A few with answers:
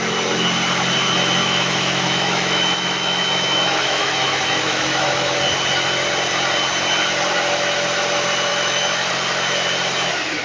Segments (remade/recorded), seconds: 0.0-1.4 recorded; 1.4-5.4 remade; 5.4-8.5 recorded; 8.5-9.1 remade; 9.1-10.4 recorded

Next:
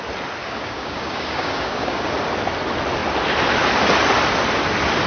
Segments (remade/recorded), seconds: 0.0-0.4 recorded; 0.4-2.1 remade; 2.1-5.1 recorded

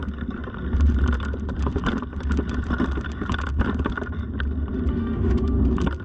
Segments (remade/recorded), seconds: 0.0-4.9 recorded; 4.9-5.6 remade; 5.6-6.0 recorded

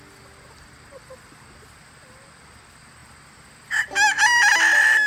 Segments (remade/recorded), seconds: 0.0-5.1 recorded

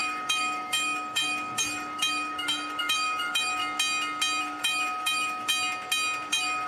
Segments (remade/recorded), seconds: 0.0-3.6 remade; 3.6-4.4 recorded; 4.4-5.5 remade; 5.5-6.3 recorded; 6.3-6.7 remade

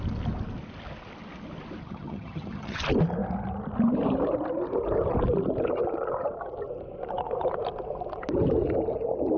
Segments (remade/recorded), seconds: 0.0-1.8 recorded; 1.8-2.8 remade; 2.8-9.4 recorded